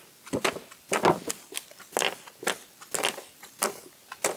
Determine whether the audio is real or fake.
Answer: real